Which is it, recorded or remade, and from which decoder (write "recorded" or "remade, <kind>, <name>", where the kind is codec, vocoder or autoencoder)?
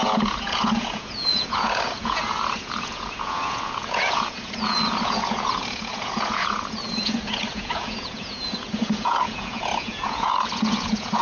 remade, vocoder, Vocos